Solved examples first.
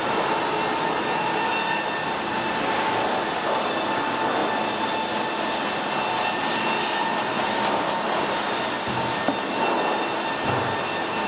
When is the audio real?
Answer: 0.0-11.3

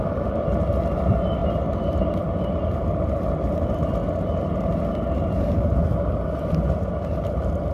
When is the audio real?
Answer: 0.0-7.7

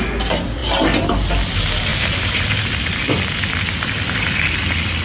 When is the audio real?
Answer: 0.0-1.9; 2.4-5.0

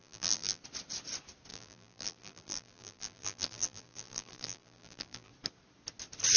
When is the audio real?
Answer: 0.6-1.5; 5.3-6.4

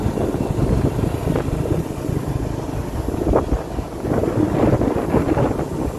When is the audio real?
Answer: 0.0-6.0

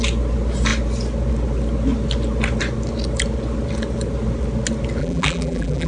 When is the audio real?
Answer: 0.0-5.0

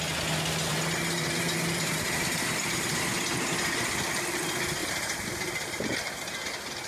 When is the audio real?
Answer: 0.0-0.7; 3.2-4.8; 6.0-6.9